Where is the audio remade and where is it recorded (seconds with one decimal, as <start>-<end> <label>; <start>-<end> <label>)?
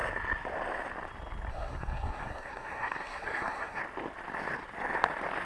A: 0.0-1.5 recorded; 1.5-3.8 remade; 3.8-5.4 recorded